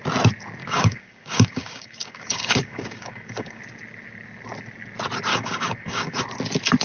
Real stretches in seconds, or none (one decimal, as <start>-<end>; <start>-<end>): 0.0-0.6; 3.6-5.3; 6.2-6.8